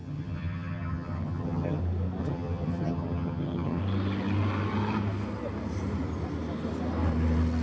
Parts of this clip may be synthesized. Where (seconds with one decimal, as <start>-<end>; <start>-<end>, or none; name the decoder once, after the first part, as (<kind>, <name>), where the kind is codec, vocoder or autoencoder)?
0.0-1.8 (vocoder, HiFi-GAN); 2.2-3.8